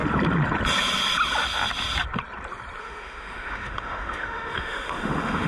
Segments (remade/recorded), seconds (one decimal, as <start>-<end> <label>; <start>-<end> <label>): 0.0-2.8 recorded; 2.8-5.5 remade